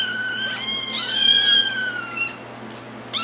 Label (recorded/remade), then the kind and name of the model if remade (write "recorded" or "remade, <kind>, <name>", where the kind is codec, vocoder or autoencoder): recorded